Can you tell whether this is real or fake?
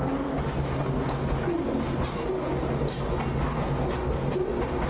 real